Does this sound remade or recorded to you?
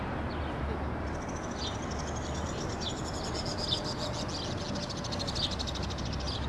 recorded